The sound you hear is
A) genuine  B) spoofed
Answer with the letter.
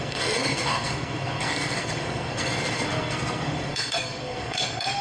B